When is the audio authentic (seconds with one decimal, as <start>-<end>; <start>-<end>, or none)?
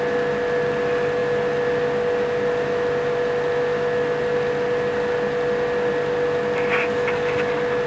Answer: 0.0-7.9